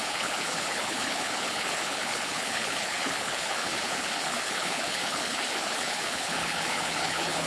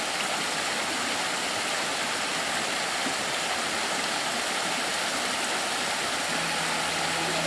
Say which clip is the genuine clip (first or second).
second